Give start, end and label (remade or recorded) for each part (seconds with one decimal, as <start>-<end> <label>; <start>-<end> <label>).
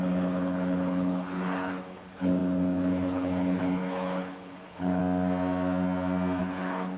0.0-5.0 remade; 5.0-6.4 recorded; 6.4-7.0 remade